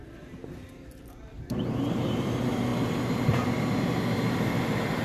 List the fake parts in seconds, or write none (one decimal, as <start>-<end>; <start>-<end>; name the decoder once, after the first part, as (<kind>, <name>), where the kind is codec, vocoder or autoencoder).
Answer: 0.0-2.7 (vocoder, BigVGAN v2); 4.6-5.0